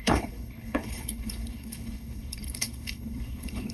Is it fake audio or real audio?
fake